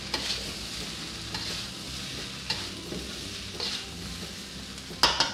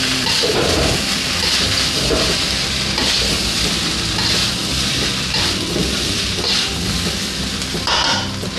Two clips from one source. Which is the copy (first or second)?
second